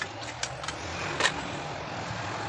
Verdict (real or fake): real